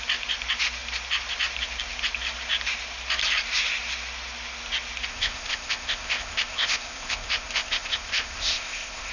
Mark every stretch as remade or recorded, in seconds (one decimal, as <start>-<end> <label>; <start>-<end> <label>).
0.0-5.1 recorded; 5.1-9.1 remade